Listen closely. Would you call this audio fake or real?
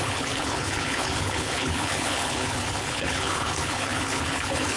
fake